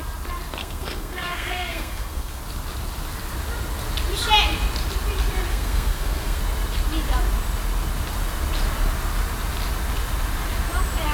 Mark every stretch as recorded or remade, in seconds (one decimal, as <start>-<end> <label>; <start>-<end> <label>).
0.0-0.6 recorded; 0.6-2.4 remade; 2.4-5.5 recorded; 5.5-6.4 remade; 6.4-11.1 recorded